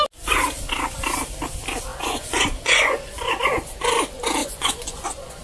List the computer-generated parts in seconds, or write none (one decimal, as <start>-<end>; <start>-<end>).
1.9-3.3; 4.4-5.4